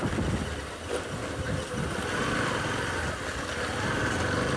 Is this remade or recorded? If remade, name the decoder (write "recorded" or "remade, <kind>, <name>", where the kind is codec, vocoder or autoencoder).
recorded